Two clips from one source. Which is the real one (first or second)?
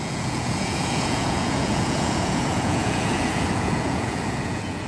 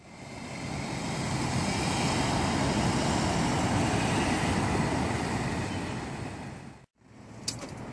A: second